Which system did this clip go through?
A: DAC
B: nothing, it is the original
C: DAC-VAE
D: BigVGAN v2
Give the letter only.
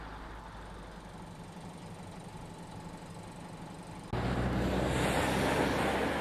B